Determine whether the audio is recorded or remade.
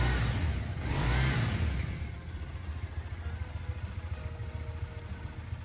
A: recorded